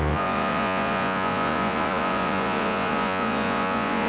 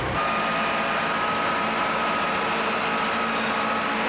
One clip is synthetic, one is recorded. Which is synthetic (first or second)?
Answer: first